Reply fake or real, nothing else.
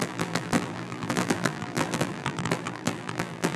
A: fake